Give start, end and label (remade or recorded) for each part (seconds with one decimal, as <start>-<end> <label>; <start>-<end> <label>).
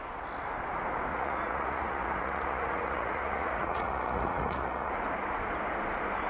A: 0.0-1.1 recorded; 1.1-4.9 remade; 4.9-6.3 recorded